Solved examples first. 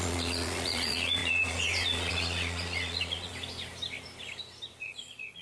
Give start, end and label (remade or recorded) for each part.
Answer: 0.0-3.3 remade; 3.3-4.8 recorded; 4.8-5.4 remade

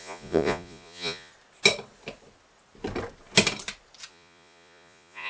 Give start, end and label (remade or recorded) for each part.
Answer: 0.0-1.3 remade; 1.3-4.1 recorded; 4.1-5.3 remade

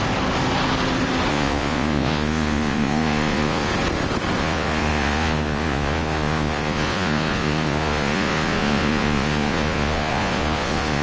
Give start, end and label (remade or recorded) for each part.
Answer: 0.0-1.3 recorded; 1.3-3.7 remade; 3.7-4.4 recorded; 4.4-11.0 remade

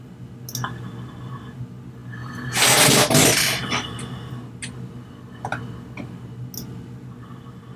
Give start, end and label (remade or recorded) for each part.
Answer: 0.0-7.8 recorded

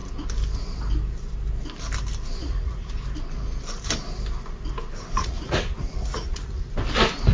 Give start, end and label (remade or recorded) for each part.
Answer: 0.0-2.4 recorded; 2.4-2.9 remade; 2.9-5.2 recorded; 5.2-6.6 remade; 6.6-7.3 recorded